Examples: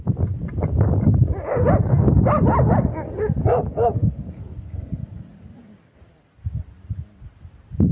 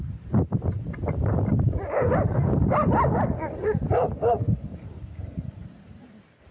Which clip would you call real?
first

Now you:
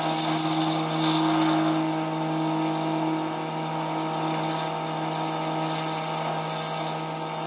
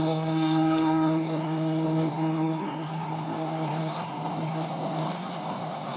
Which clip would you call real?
first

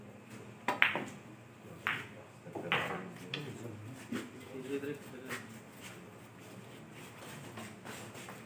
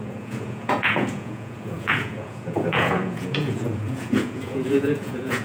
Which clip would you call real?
first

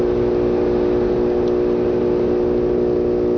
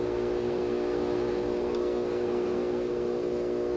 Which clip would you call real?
first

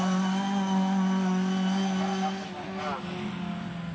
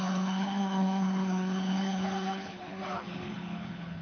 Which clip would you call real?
first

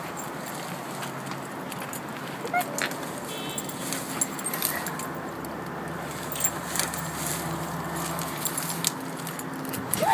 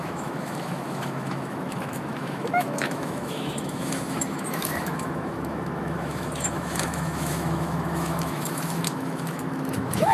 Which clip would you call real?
first